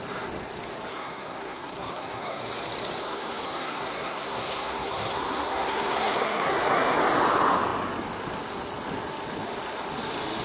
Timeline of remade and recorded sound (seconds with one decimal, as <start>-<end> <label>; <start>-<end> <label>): 0.0-0.9 recorded; 0.9-2.4 remade; 2.4-3.0 recorded; 3.0-7.0 remade; 7.0-10.4 recorded